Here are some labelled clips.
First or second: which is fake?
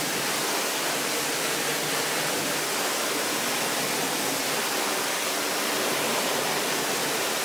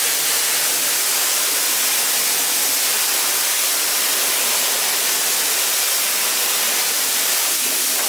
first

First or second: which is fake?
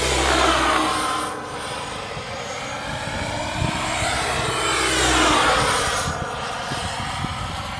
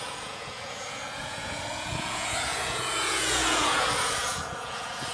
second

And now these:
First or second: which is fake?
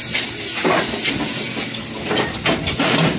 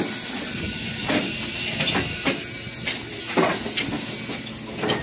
first